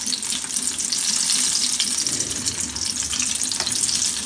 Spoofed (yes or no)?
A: no